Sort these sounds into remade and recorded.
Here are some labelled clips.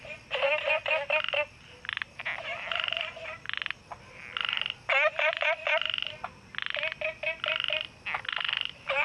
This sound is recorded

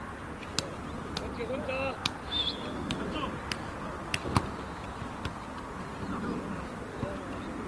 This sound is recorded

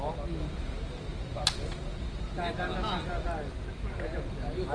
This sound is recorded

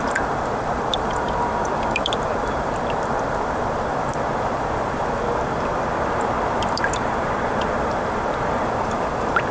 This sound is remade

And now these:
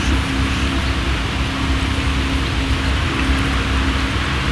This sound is recorded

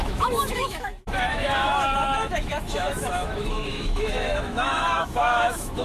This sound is remade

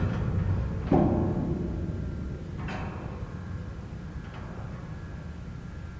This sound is recorded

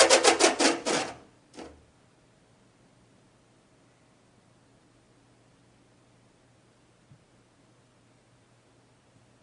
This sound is recorded